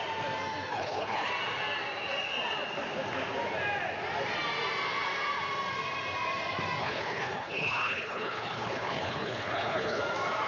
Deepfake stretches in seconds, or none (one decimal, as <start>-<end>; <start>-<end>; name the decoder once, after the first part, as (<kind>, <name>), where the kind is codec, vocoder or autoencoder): 0.7-1.3 (codec, HILCodec); 6.8-10.0